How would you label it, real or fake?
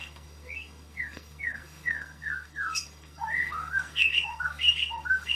fake